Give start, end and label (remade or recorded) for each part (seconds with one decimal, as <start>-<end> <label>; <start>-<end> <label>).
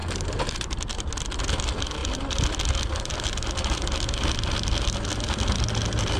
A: 0.0-6.2 recorded